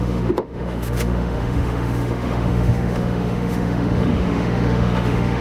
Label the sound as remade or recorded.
remade